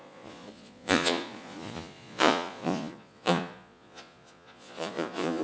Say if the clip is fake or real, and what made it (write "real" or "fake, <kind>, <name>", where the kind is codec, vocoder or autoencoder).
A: fake, vocoder, Vocos